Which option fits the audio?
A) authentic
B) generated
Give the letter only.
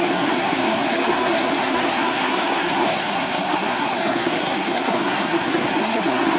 B